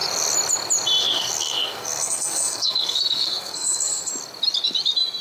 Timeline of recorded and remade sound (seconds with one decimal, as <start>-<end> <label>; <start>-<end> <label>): 0.0-1.0 recorded; 1.0-4.1 remade; 4.1-5.2 recorded